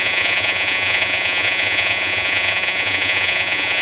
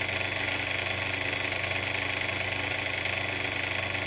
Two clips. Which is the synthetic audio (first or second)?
first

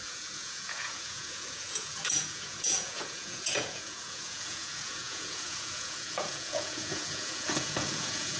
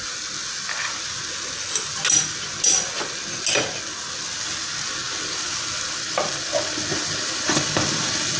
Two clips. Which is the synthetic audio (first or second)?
first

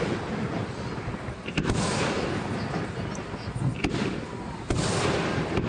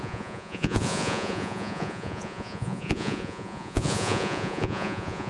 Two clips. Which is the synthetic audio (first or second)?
second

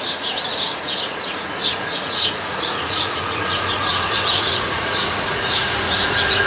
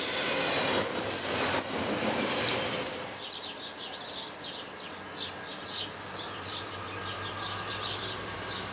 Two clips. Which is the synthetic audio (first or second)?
first